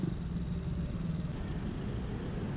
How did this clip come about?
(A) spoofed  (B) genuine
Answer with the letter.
B